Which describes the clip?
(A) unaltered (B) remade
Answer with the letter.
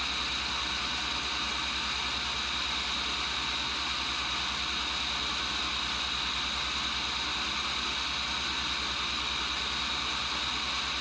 A